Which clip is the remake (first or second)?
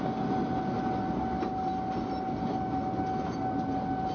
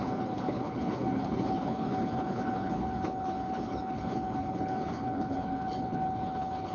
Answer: second